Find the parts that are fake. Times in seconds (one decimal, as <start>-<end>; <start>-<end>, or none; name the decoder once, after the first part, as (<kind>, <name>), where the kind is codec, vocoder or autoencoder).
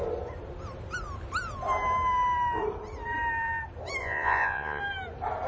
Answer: 4.0-4.8 (vocoder, Vocos)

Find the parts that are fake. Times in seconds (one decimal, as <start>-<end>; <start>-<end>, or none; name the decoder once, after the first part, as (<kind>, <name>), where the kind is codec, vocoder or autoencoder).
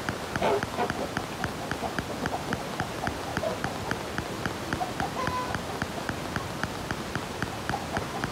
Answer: none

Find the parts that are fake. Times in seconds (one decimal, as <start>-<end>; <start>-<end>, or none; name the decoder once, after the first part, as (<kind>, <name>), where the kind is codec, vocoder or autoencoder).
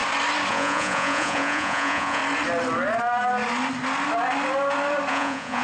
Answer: 0.5-2.2 (vocoder, Vocos); 5.1-5.6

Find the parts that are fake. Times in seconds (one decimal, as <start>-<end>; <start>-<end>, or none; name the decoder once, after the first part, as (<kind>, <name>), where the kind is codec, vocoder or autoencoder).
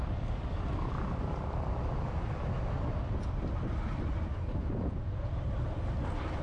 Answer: 4.6-5.3 (vocoder, Vocos)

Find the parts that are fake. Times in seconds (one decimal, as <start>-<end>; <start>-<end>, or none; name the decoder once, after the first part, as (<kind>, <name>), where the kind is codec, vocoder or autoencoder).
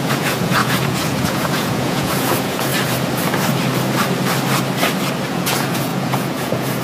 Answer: 0.0-2.7 (vocoder, Vocos); 5.3-6.8